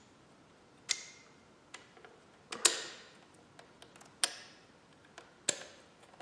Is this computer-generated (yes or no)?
no